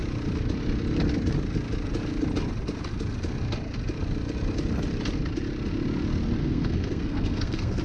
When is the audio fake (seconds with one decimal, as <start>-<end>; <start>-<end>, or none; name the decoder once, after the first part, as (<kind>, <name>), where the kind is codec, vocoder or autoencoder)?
6.4-7.8 (codec, SNAC)